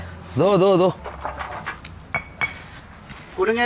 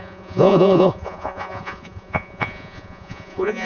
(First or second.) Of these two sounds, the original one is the first